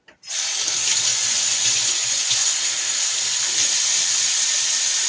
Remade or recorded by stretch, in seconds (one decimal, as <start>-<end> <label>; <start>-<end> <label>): 0.0-1.1 recorded; 1.1-2.6 remade; 2.6-5.1 recorded